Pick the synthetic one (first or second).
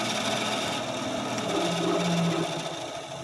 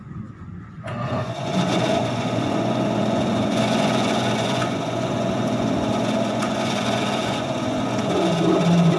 second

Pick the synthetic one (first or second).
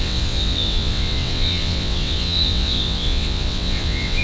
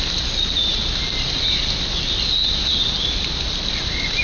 first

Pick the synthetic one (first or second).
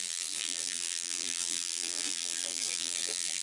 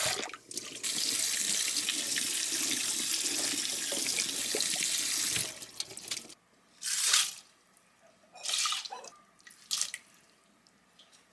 first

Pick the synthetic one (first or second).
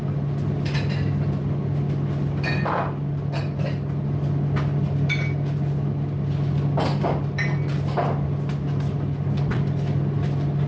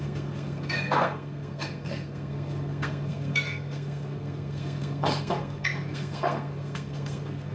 second